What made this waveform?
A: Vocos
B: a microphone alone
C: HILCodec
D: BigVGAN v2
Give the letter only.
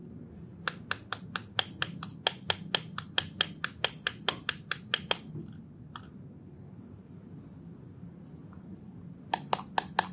B